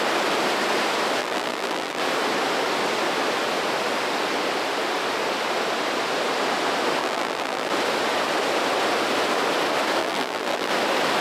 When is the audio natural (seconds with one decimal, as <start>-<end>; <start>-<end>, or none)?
0.0-1.2; 2.0-7.0; 7.7-10.0; 10.7-11.2